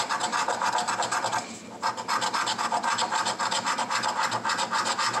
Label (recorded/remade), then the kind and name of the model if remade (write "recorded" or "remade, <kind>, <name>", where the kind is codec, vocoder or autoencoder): recorded